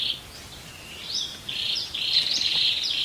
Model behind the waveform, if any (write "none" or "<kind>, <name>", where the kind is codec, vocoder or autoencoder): none